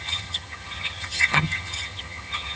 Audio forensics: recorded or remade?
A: remade